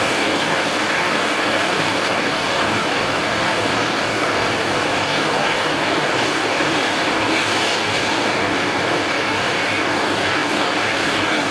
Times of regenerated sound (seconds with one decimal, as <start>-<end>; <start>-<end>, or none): 0.0-11.5